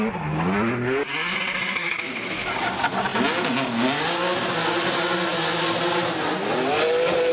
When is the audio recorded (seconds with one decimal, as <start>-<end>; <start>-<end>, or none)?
0.0-1.8; 2.5-7.3